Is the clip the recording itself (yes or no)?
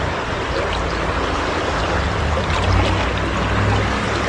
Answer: yes